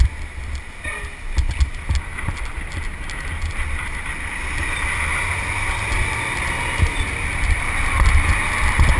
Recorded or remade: recorded